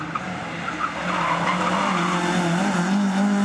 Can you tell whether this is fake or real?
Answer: real